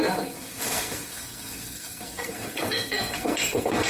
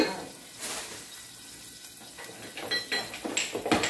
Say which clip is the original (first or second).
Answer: second